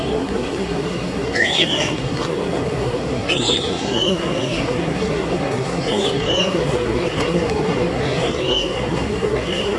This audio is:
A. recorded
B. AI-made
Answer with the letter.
B